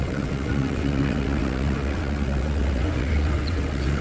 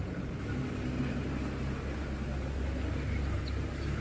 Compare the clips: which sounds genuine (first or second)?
second